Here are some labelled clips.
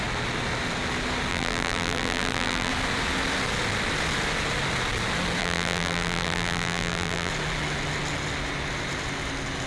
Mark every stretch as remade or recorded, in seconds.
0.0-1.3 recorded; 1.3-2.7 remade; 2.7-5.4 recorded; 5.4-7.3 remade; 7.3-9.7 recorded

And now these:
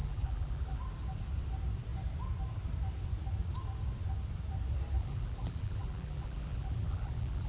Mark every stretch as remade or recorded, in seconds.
0.0-0.8 remade; 0.8-5.0 recorded; 5.0-7.5 remade

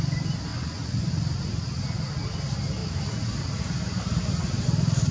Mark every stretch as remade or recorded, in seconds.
0.0-0.5 recorded; 0.5-1.1 remade; 1.1-5.1 recorded

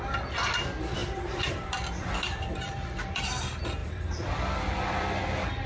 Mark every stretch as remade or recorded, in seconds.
0.0-1.0 recorded; 1.0-3.2 remade; 3.2-3.8 recorded; 3.8-5.2 remade; 5.2-5.7 recorded

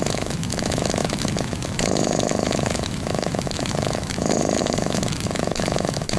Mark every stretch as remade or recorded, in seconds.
0.0-6.2 remade

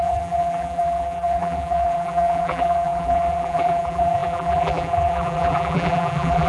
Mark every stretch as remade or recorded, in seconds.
0.0-6.5 remade